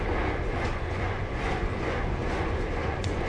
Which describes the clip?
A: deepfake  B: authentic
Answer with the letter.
A